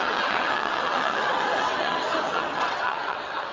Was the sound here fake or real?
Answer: fake